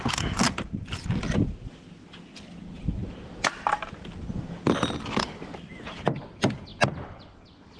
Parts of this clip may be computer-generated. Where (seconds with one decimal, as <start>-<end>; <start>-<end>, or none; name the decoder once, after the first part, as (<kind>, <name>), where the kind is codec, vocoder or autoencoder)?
none